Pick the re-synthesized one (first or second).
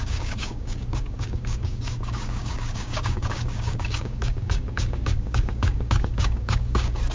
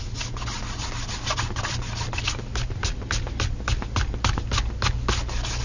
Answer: first